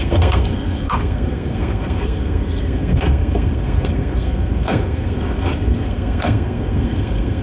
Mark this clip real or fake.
fake